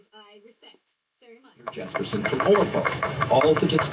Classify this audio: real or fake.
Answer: fake